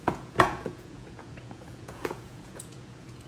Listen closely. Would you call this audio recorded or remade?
remade